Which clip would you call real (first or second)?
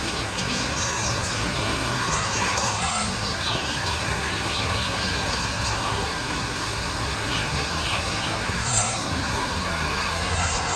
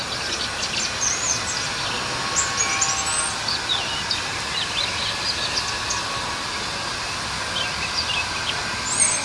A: second